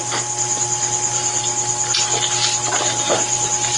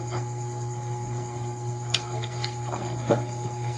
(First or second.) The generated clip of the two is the second